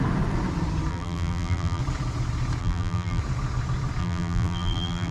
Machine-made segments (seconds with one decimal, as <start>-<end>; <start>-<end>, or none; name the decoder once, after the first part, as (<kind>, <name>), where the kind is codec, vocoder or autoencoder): 0.9-1.8 (vocoder, BigVGAN v2); 2.6-3.2; 4.0-5.1